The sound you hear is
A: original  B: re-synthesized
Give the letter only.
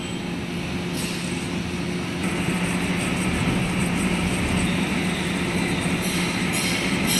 A